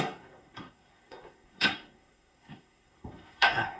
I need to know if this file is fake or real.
fake